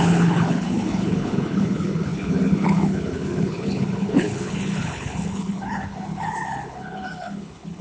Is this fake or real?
fake